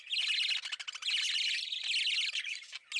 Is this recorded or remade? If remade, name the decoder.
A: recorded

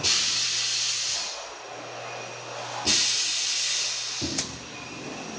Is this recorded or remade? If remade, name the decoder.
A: recorded